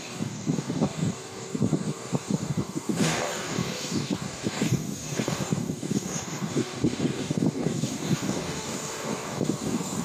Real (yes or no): no